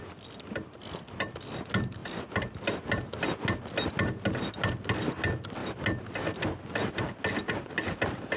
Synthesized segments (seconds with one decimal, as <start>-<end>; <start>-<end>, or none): none

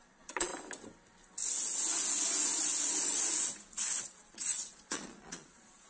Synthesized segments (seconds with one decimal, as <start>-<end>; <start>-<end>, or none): 0.0-0.5; 4.0-5.9

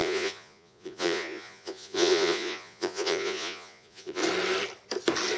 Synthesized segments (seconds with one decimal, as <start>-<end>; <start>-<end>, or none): 0.0-4.2

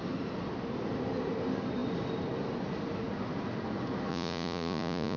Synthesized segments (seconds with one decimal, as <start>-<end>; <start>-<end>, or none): 4.1-5.2

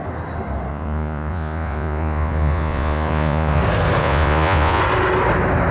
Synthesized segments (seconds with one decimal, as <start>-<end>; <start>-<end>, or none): 0.7-3.6; 4.0-4.8